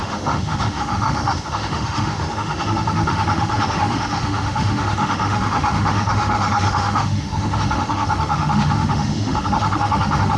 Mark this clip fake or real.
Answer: fake